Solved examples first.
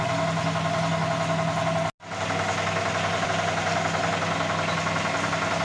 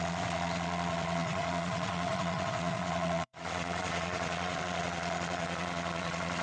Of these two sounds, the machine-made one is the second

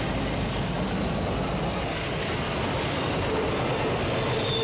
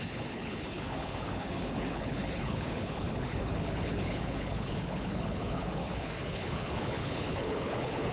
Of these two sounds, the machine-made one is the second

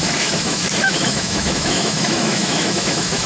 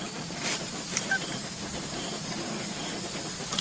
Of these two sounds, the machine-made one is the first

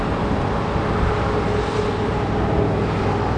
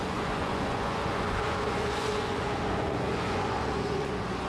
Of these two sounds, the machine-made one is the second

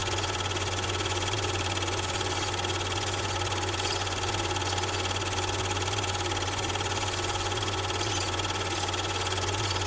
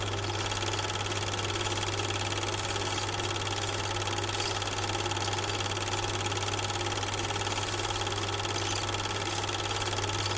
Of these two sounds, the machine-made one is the first